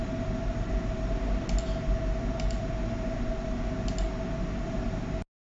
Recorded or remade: recorded